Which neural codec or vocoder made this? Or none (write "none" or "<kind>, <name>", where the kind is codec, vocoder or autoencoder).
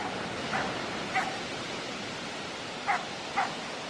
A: none